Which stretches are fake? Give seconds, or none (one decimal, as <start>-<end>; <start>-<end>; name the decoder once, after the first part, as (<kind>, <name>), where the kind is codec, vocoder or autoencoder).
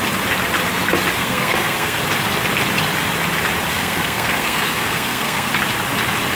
1.2-2.0 (codec, SNAC); 3.7-5.5